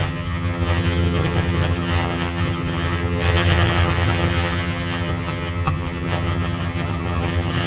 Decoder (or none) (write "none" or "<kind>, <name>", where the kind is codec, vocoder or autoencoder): vocoder, HiFi-GAN